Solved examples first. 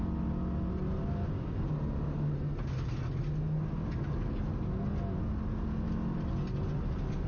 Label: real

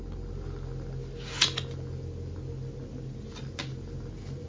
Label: real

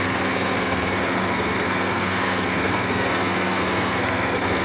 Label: fake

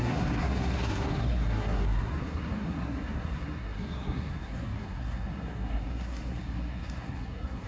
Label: fake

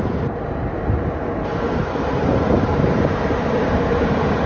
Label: fake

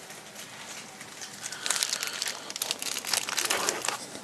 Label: real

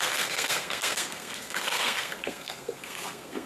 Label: fake